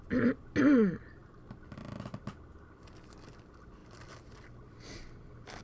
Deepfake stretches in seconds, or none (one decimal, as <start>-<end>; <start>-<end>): 3.8-5.6